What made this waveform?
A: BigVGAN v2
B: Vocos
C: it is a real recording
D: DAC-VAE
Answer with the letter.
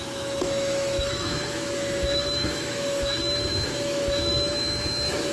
D